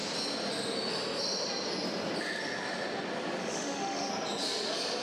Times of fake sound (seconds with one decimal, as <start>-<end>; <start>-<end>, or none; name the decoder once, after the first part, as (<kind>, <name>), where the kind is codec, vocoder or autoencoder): 3.4-4.1 (autoencoder, DAC-VAE)